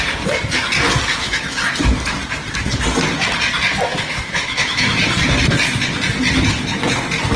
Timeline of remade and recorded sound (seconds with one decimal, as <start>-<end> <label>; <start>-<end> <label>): 0.0-1.1 recorded; 1.1-1.7 remade; 1.7-3.9 recorded; 3.9-5.0 remade; 5.0-7.4 recorded